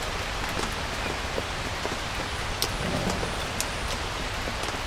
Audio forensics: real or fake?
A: real